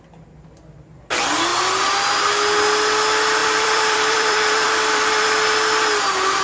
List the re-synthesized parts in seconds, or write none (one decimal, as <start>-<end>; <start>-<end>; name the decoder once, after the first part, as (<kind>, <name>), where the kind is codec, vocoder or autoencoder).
3.4-5.3 (vocoder, BigVGAN v2)